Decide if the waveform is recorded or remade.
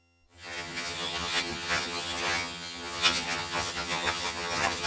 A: remade